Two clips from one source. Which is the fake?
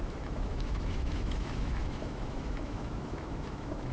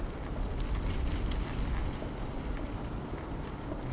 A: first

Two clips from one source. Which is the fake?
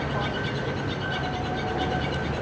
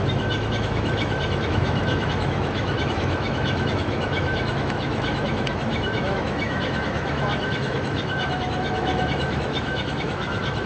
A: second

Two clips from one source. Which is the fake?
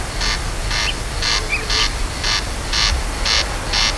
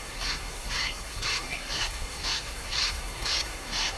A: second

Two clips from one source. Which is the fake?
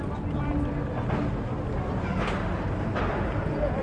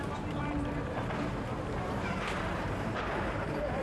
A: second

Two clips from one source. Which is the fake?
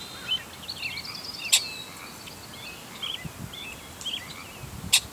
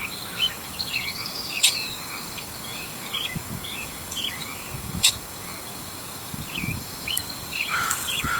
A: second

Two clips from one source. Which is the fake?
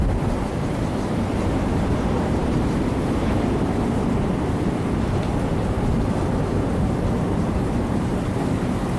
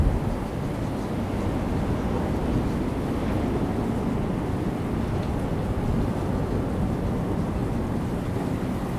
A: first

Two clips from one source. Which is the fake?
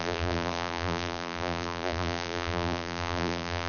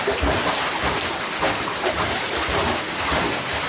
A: first